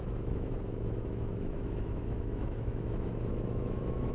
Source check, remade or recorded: remade